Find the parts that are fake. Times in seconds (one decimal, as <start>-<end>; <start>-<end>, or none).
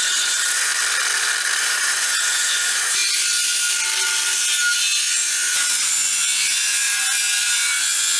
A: 0.0-0.7; 1.6-3.0; 4.8-8.2